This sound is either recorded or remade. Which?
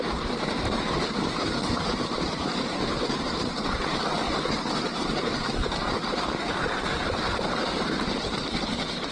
remade